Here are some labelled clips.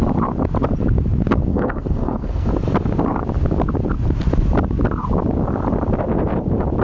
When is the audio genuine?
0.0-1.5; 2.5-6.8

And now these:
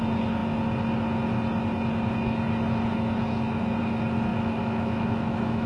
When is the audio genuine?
0.0-4.3

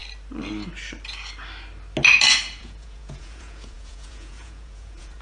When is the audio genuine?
0.0-2.6